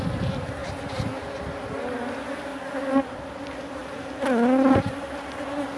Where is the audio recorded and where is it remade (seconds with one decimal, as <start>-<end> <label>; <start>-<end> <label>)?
0.0-2.5 recorded; 2.5-3.0 remade; 3.0-5.8 recorded